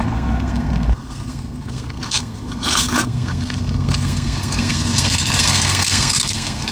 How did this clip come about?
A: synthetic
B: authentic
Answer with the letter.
A